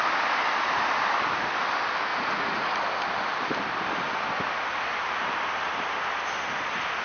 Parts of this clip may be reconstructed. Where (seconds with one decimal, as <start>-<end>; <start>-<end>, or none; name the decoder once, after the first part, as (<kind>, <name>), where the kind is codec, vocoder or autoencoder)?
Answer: 2.1-2.7 (vocoder, Vocos)